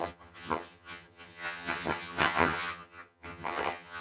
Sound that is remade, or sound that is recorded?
remade